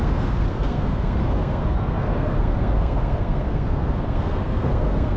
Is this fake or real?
fake